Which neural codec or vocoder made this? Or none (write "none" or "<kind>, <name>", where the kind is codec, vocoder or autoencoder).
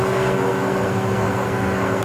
codec, SNAC